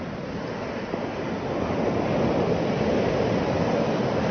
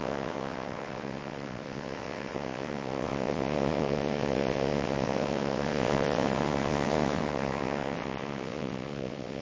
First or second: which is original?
first